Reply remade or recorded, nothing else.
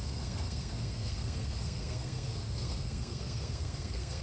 remade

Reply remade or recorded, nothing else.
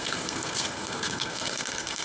remade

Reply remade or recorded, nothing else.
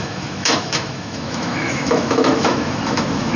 remade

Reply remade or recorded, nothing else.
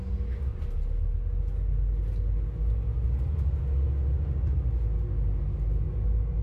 recorded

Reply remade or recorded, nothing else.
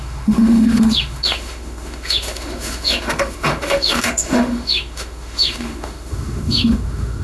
remade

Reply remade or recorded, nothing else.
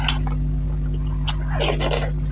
recorded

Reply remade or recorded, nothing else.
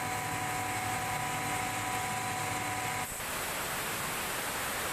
recorded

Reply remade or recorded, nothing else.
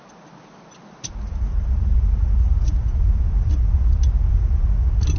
recorded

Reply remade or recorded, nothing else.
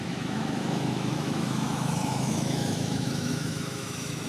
remade